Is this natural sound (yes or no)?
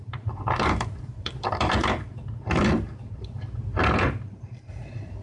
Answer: no